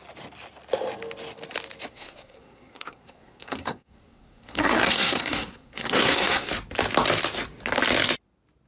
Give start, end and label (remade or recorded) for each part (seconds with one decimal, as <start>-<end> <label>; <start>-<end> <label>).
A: 0.0-1.9 recorded; 1.9-6.5 remade; 6.5-8.7 recorded